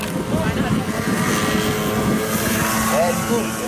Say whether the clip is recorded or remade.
recorded